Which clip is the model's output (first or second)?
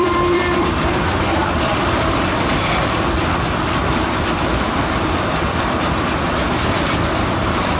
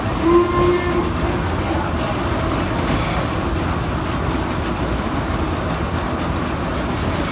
first